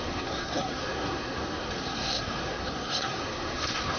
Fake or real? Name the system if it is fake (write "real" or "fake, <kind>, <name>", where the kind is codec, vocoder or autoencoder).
fake, codec, SNAC